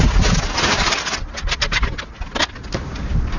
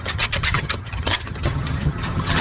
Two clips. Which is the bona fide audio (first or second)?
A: first